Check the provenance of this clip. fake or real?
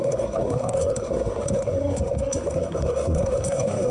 fake